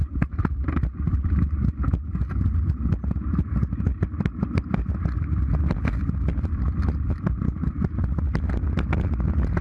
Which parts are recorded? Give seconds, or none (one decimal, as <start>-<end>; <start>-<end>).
0.0-9.6